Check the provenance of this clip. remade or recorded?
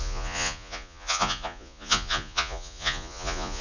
remade